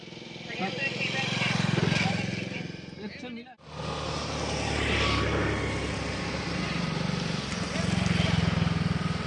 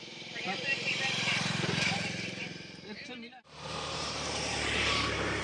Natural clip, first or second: first